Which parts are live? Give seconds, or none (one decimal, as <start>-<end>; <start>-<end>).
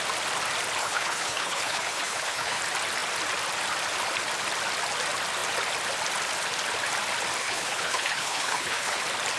0.0-0.8; 2.6-7.4; 9.0-9.4